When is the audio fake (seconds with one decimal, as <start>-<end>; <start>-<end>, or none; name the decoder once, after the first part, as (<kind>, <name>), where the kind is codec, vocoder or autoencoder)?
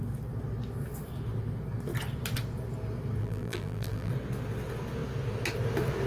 3.2-4.1 (vocoder, BigVGAN v2)